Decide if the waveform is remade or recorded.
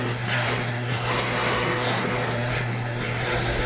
remade